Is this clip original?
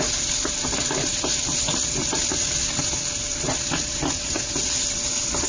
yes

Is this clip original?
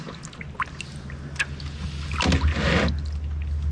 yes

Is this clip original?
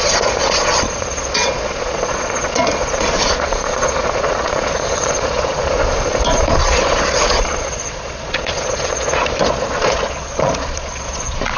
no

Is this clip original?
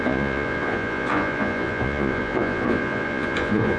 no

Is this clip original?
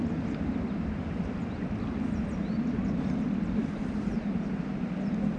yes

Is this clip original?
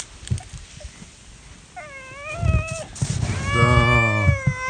yes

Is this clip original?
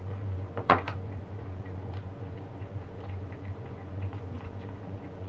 no